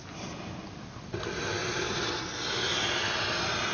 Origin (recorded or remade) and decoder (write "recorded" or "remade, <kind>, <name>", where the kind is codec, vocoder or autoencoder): recorded